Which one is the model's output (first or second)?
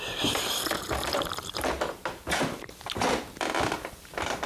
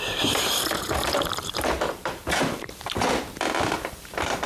second